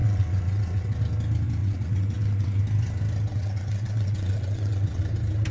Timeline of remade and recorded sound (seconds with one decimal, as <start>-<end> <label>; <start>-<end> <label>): 0.0-1.0 remade; 1.0-1.6 recorded; 1.6-2.6 remade; 2.6-3.3 recorded; 3.3-5.0 remade; 5.0-5.5 recorded